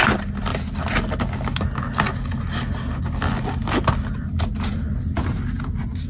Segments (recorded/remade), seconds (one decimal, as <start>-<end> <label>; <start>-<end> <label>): 0.0-6.1 recorded